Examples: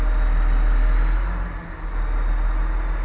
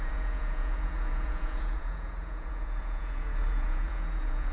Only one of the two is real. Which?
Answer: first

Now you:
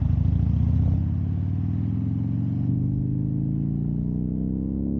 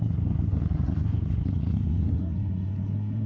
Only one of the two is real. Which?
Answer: first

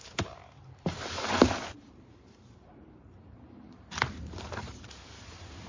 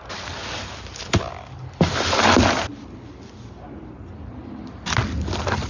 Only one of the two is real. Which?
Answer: second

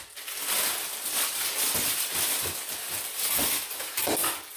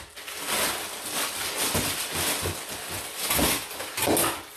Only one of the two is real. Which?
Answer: second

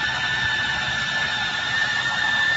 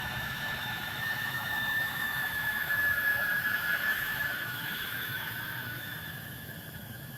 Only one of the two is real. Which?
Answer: first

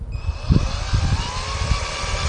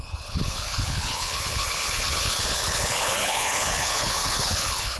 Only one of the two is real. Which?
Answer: first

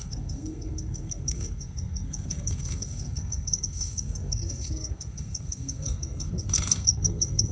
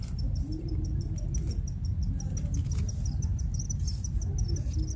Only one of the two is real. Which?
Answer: second